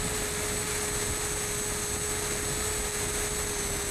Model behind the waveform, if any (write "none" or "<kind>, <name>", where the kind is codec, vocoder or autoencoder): none